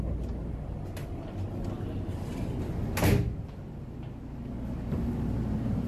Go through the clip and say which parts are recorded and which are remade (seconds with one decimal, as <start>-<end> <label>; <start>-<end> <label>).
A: 0.0-5.9 recorded